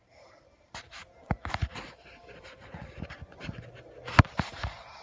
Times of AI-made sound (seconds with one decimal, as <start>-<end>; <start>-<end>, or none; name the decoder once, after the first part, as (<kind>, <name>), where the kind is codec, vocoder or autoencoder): 0.0-5.0 (vocoder, BigVGAN v2)